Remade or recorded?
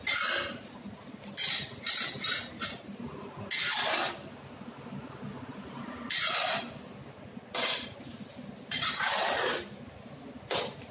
recorded